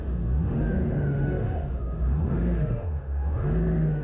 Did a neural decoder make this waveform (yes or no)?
yes